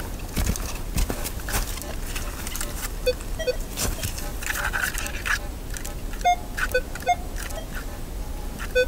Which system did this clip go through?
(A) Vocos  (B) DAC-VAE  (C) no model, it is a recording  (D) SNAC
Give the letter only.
C